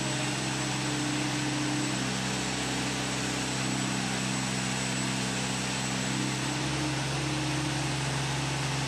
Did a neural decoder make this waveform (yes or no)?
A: no